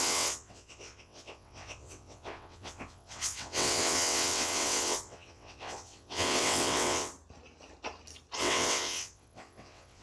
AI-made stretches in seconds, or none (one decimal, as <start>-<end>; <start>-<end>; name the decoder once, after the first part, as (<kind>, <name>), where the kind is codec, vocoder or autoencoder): 0.0-7.1 (vocoder, WaveNeXt); 8.4-10.0